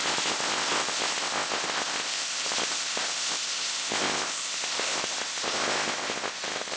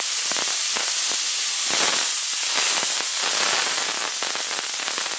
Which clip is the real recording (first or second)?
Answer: second